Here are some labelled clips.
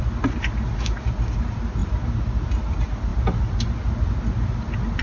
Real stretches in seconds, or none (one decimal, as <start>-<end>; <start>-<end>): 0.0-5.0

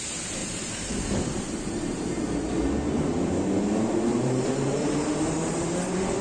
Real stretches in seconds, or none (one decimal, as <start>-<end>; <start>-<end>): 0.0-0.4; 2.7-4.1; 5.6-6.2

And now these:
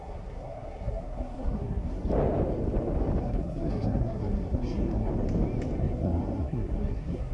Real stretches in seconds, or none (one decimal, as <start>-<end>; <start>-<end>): 2.0-3.2; 5.1-5.8

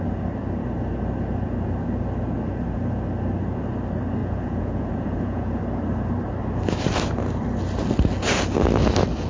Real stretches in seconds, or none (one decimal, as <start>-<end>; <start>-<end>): 0.0-4.2; 5.6-9.3

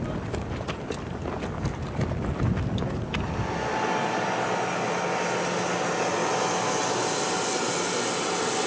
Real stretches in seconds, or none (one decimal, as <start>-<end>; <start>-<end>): 0.0-8.7